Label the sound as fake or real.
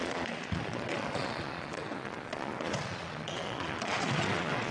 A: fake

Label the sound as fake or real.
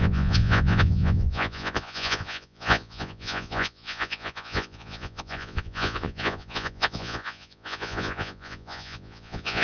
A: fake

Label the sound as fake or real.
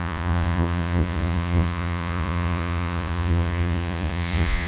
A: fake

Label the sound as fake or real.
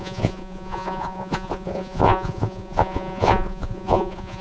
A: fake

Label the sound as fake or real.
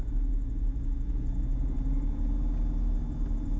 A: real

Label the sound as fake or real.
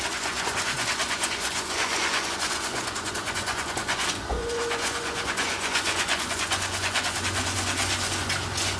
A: fake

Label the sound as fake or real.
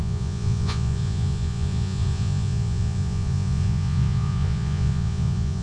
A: fake